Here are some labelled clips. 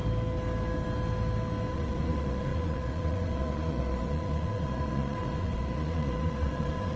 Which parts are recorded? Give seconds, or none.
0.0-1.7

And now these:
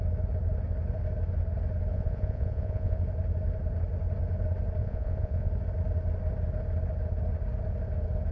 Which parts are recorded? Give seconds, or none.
0.0-1.9; 3.0-4.8; 5.5-8.3

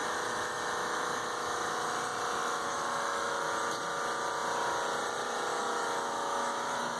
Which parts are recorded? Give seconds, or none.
2.0-2.4; 3.5-5.5

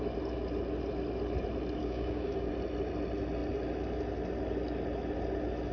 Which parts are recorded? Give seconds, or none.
0.0-1.8; 2.5-5.7

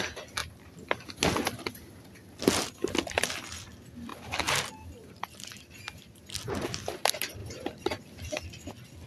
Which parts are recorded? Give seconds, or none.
0.0-9.1

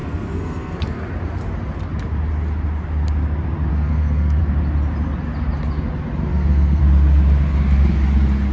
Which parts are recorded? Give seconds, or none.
1.0-3.7; 4.4-6.3; 6.8-8.5

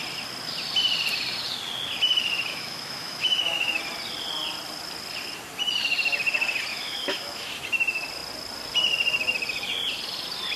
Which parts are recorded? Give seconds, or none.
0.0-2.5; 3.8-6.7; 7.6-10.6

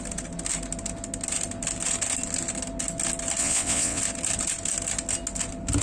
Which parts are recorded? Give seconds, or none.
0.0-3.4; 4.0-5.8